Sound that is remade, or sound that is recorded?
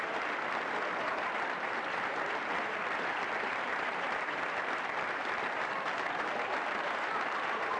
remade